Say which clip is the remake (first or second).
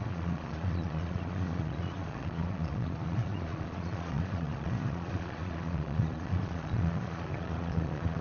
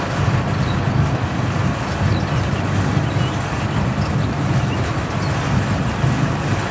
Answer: first